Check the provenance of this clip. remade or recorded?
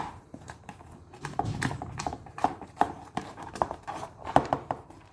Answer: remade